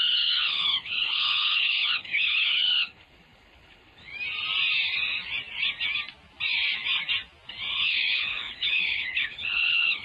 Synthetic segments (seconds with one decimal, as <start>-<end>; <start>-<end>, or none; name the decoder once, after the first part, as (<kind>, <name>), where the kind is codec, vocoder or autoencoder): 0.0-4.1 (codec, HILCodec); 7.7-10.0